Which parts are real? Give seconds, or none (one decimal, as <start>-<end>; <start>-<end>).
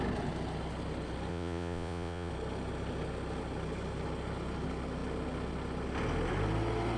0.0-1.3; 2.3-7.0